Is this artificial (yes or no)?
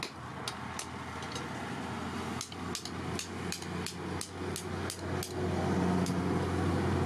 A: no